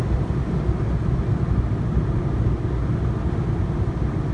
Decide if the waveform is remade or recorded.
recorded